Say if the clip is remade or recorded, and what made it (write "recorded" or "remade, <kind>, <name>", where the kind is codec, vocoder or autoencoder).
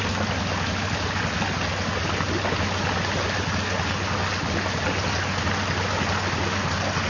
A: recorded